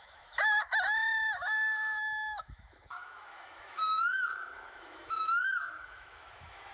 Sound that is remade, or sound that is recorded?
remade